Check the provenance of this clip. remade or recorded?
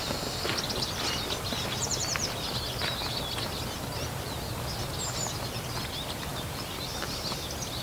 recorded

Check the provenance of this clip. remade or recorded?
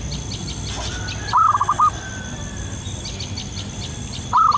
recorded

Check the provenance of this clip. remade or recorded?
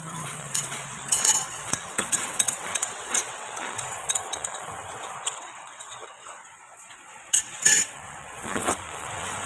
remade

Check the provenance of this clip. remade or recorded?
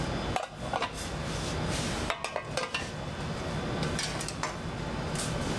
recorded